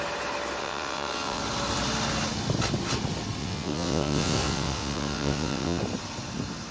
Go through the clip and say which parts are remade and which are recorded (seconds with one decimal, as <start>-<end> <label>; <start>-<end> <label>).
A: 0.0-0.6 recorded; 0.6-1.4 remade; 1.4-3.4 recorded; 3.4-5.8 remade; 5.8-6.7 recorded